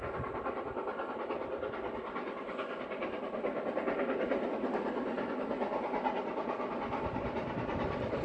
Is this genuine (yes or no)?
yes